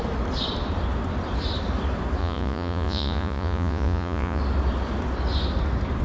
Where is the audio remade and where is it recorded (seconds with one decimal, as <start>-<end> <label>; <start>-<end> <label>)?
0.0-2.2 recorded; 2.2-4.4 remade; 4.4-6.0 recorded